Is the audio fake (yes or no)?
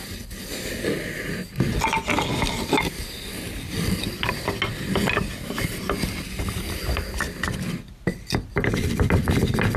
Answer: no